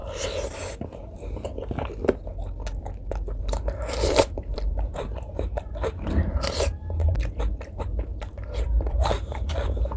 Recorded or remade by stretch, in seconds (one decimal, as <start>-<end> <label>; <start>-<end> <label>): 0.0-3.4 recorded; 3.4-10.0 remade